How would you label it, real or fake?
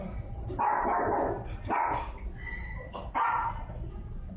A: real